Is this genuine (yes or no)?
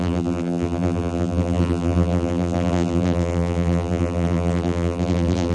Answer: no